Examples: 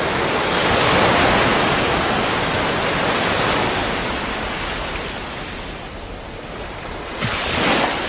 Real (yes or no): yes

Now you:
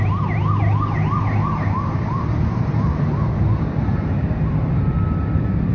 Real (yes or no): yes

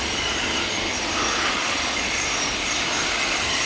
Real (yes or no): no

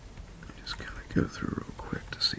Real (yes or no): yes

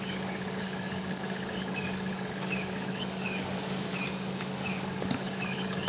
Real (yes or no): no